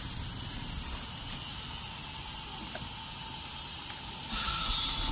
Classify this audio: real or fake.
real